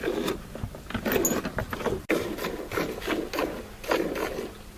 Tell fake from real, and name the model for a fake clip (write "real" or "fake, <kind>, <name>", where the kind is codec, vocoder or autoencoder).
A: real